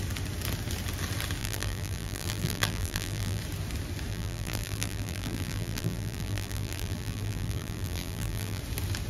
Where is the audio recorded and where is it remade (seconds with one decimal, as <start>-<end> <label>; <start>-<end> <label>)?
0.0-1.4 recorded; 1.4-3.4 remade; 3.4-4.1 recorded; 4.1-8.6 remade; 8.6-9.1 recorded